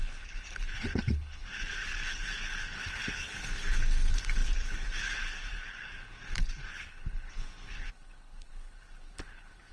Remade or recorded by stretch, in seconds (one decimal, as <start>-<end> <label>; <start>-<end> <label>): 0.0-9.7 remade